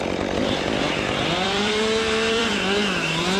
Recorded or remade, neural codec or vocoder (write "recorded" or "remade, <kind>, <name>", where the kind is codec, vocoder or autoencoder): remade, vocoder, BigVGAN v2